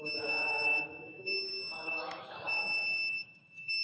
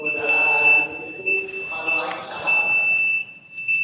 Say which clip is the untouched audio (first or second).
second